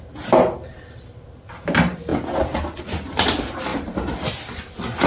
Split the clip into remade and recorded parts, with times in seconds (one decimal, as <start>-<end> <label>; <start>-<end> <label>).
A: 0.0-3.7 recorded; 3.7-4.6 remade; 4.6-5.1 recorded